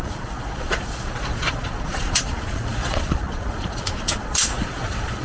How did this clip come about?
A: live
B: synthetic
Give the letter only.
B